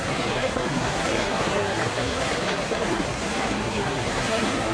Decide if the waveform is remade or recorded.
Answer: remade